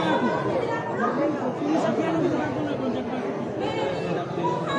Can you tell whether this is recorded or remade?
recorded